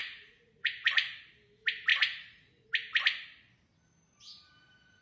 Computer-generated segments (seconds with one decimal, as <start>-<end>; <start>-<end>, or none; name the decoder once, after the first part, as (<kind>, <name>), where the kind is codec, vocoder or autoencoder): 0.0-1.2 (vocoder, Vocos); 1.9-2.7